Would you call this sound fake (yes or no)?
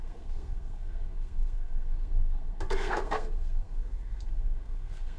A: yes